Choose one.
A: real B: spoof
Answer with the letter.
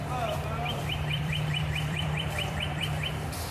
B